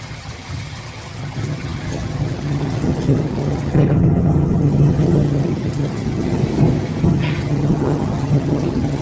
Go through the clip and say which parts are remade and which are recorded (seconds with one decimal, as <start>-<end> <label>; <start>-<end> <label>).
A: 0.0-6.4 remade; 6.4-7.0 recorded; 7.0-9.0 remade